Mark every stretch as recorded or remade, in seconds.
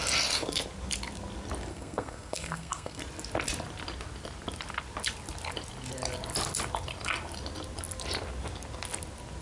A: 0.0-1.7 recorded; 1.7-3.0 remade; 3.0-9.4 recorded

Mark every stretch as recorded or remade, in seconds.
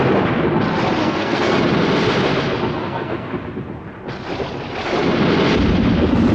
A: 0.0-1.0 recorded; 1.0-1.6 remade; 1.6-2.8 recorded; 2.8-3.3 remade; 3.3-6.3 recorded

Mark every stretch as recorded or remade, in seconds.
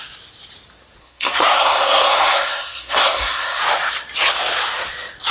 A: 0.0-1.0 recorded; 1.0-3.6 remade; 3.6-5.3 recorded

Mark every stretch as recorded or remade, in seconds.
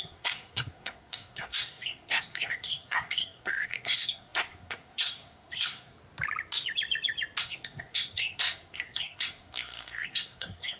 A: 0.0-5.9 remade; 5.9-7.4 recorded; 7.4-10.8 remade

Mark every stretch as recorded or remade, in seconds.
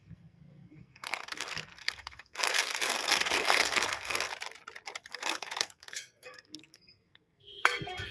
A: 0.0-4.3 remade; 4.3-5.1 recorded; 5.1-8.1 remade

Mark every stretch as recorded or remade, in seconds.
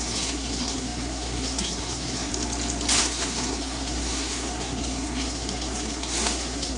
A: 0.0-2.3 remade; 2.3-3.0 recorded; 3.0-6.8 remade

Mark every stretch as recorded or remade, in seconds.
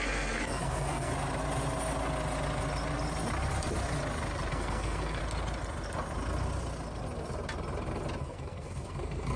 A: 0.0-1.1 remade; 1.1-4.5 recorded; 4.5-5.2 remade; 5.2-8.2 recorded; 8.2-9.4 remade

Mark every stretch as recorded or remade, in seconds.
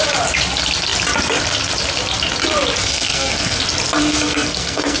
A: 0.0-2.8 recorded; 2.8-3.6 remade; 3.6-4.0 recorded; 4.0-5.0 remade